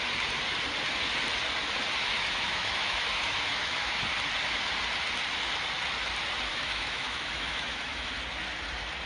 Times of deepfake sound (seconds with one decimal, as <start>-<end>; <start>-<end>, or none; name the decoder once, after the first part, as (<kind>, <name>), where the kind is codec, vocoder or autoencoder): 2.1-4.0 (autoencoder, DAC-VAE); 6.5-8.1